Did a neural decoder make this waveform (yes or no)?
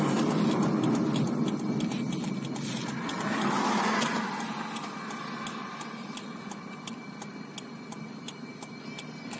no